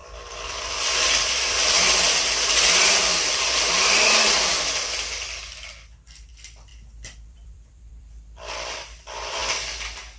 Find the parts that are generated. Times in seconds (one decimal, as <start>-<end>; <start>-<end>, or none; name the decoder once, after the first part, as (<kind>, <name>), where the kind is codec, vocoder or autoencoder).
0.0-4.5 (vocoder, BigVGAN v2); 6.7-8.7